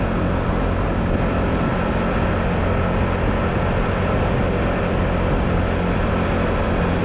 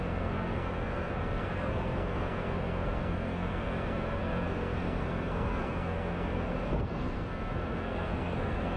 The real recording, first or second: first